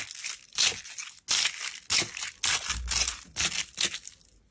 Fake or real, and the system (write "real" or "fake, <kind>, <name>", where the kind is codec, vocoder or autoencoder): real